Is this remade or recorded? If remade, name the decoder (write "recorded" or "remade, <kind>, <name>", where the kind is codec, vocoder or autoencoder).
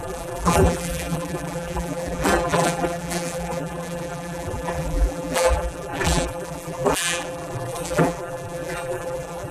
remade, vocoder, BigVGAN v2